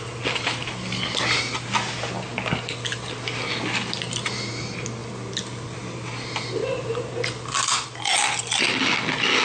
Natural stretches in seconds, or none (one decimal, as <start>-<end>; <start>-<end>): 0.0-9.4